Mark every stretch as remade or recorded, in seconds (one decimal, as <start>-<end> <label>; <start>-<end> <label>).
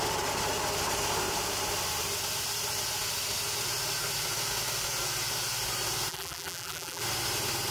0.0-6.1 recorded; 6.1-7.0 remade; 7.0-7.7 recorded